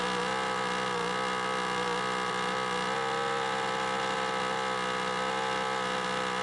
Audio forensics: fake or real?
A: real